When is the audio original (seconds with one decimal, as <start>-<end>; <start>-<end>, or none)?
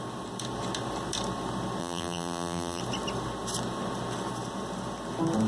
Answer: 0.0-1.8; 2.8-5.5